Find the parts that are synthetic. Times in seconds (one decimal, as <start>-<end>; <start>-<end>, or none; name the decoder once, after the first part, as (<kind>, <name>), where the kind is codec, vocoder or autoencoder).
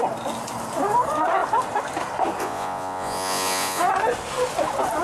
2.4-3.8 (vocoder, Vocos)